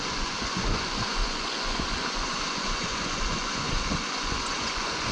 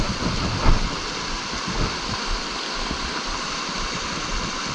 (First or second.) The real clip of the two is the second